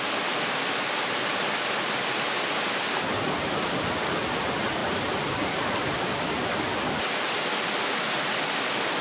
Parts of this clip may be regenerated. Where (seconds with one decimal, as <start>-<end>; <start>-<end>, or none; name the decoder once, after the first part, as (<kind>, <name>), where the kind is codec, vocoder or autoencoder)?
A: none